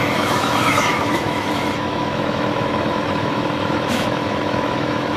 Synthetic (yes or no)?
yes